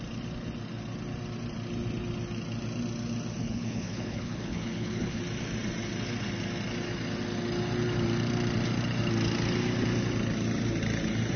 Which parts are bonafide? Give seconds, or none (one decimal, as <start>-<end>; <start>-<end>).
0.0-3.4; 5.2-11.4